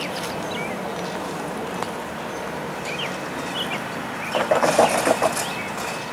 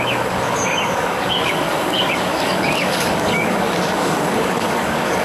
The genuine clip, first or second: first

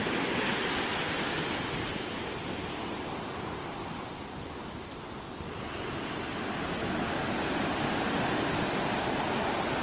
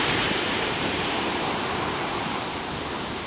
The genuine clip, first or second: first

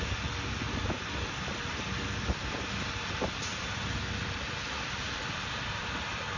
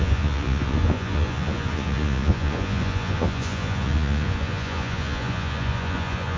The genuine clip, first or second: first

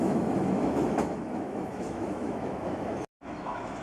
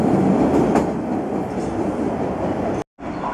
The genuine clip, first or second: second